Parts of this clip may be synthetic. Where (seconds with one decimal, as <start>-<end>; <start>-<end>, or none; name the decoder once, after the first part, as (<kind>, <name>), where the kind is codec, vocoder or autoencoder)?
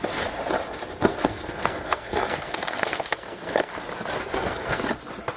1.1-3.7 (codec, SNAC); 4.3-4.8